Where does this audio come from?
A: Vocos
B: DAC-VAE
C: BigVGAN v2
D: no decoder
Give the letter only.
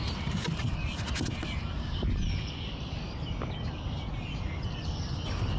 D